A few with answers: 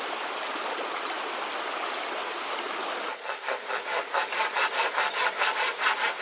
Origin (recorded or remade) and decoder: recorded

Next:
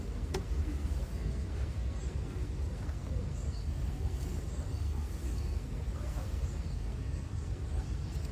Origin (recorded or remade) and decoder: remade, codec, SNAC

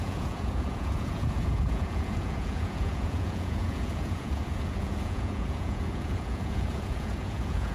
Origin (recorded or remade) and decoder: remade, vocoder, Vocos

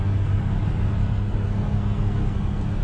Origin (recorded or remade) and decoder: remade, codec, SNAC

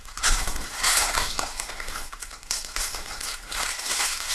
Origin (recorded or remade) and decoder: remade, codec, SNAC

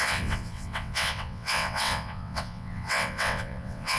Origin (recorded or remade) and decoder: remade, vocoder, WaveNeXt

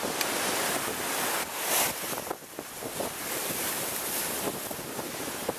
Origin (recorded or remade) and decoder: recorded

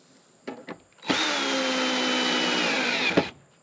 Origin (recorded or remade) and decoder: recorded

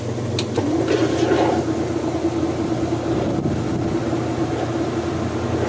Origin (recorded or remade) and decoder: recorded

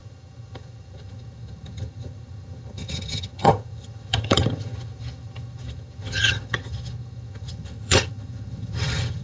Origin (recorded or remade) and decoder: remade, vocoder, HiFi-GAN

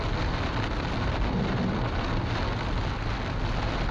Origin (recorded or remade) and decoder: recorded